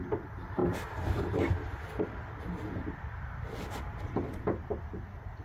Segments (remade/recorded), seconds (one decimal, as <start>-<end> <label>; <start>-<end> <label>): 0.0-5.4 recorded